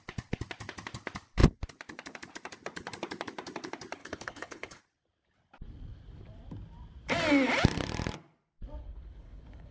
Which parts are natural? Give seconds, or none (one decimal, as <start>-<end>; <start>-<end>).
0.0-4.0; 4.8-8.8